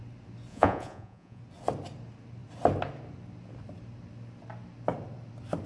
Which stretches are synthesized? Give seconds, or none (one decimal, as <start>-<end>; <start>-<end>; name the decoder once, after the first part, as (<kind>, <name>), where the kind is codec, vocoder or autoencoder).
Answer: 0.5-1.4 (vocoder, Vocos)